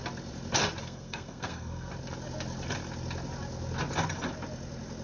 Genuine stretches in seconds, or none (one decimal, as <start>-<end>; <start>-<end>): 0.0-0.8; 1.9-5.0